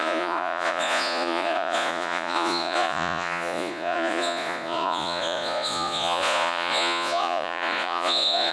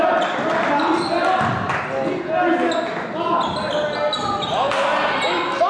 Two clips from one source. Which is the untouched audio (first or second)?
second